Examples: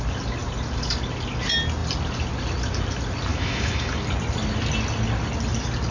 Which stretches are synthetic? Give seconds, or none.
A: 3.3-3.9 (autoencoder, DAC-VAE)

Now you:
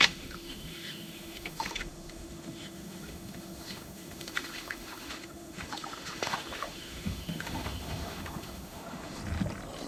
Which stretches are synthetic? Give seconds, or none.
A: 0.0-9.2 (autoencoder, DAC-VAE)